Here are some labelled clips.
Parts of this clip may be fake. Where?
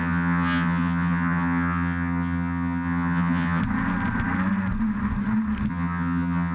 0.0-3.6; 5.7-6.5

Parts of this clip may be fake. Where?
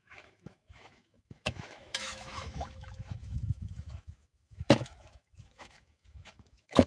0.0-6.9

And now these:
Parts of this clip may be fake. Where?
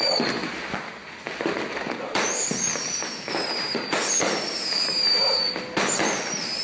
none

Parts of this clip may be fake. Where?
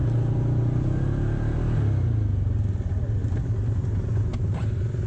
none